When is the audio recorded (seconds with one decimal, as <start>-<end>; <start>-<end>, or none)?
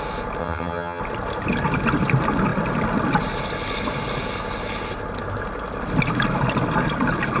0.0-0.4; 1.0-7.4